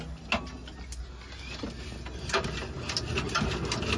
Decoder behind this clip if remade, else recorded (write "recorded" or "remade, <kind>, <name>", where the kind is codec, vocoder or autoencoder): recorded